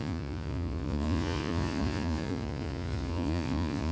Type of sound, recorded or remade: remade